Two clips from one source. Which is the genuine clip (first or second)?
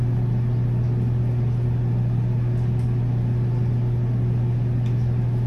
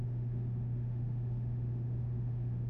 first